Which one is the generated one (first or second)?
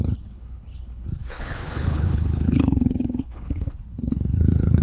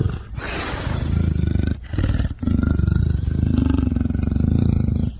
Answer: first